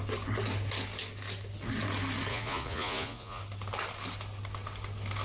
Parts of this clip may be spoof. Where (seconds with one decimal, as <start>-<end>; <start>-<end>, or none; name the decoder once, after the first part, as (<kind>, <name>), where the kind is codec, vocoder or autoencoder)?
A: 2.3-3.4 (vocoder, Vocos)